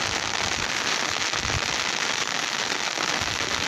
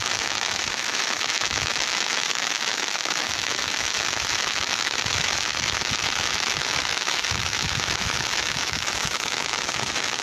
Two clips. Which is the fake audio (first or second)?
second